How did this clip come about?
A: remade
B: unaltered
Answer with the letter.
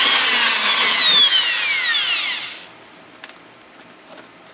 B